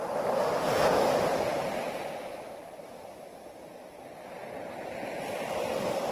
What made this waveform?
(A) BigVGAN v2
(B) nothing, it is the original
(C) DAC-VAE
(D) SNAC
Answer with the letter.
B